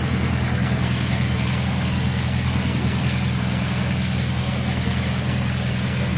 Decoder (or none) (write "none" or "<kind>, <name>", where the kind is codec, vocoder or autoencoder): codec, SNAC